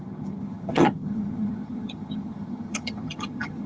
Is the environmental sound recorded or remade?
remade